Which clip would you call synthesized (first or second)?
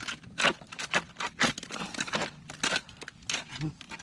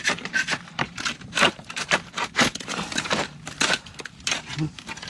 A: second